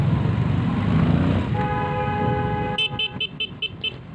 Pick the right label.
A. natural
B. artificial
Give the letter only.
A